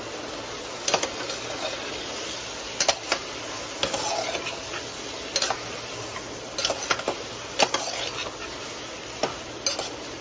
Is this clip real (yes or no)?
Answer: yes